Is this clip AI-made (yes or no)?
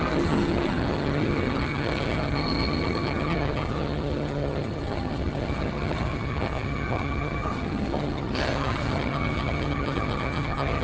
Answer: yes